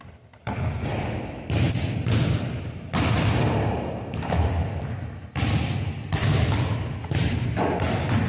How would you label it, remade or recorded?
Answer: recorded